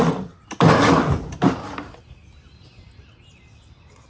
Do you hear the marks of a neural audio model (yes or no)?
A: no